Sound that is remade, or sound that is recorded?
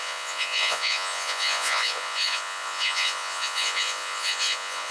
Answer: remade